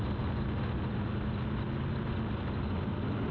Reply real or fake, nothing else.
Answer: real